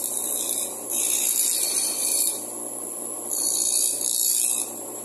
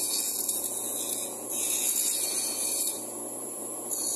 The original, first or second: first